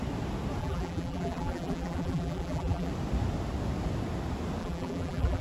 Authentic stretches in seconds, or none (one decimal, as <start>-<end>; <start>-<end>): 0.0-0.6; 2.9-4.6